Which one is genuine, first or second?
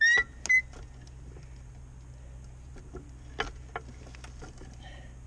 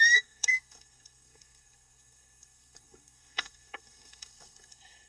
first